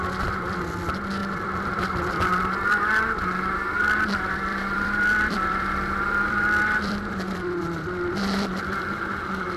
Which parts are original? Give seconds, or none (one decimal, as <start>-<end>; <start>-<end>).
0.0-1.2; 2.2-4.5; 9.0-9.6